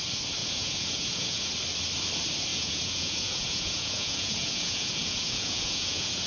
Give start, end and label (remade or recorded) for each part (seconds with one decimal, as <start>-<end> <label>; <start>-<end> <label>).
0.0-0.4 recorded; 0.4-1.5 remade; 1.5-2.5 recorded; 2.5-6.3 remade